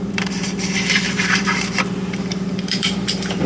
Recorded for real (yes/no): no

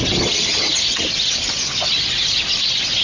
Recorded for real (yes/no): yes